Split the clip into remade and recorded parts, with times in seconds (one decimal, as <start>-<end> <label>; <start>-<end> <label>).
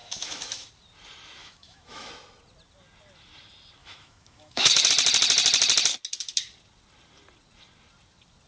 0.0-0.7 remade; 0.7-1.4 recorded; 1.4-2.1 remade; 2.1-3.8 recorded; 3.8-4.9 remade; 4.9-8.5 recorded